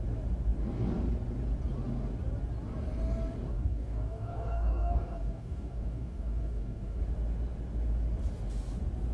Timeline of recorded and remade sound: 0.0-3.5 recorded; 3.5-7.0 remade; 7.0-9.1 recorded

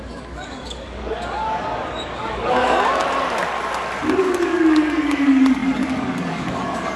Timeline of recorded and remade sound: 0.0-3.0 remade; 3.0-4.2 recorded; 4.2-7.0 remade

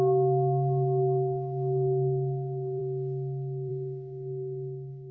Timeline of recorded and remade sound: 0.0-2.8 remade; 2.8-3.7 recorded; 3.7-5.1 remade

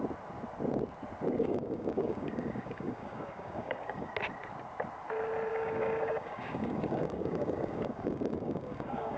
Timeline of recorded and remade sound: 0.0-1.4 recorded; 1.4-4.1 remade; 4.1-5.5 recorded; 5.5-9.2 remade